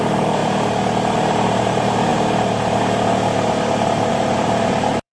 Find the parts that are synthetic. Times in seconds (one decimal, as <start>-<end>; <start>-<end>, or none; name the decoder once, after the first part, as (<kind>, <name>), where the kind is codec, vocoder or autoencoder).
0.0-0.4 (vocoder, BigVGAN v2); 1.6-2.1; 4.1-5.2